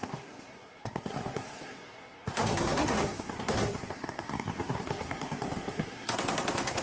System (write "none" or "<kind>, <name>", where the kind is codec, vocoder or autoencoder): codec, SNAC